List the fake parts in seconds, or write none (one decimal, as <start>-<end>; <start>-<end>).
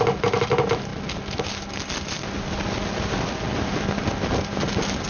none